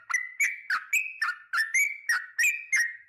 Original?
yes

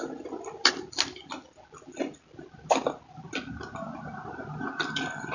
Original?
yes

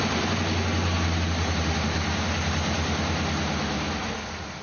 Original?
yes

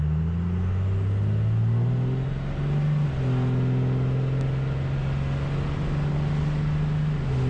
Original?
yes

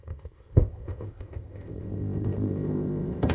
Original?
no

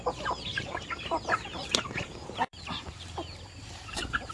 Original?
no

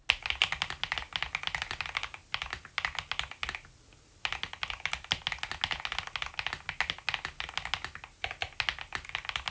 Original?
yes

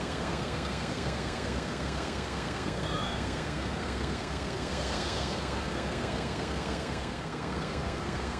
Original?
no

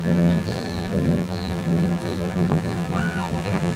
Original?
no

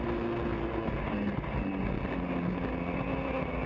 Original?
yes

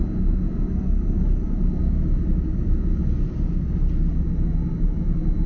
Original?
yes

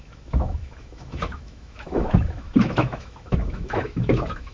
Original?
no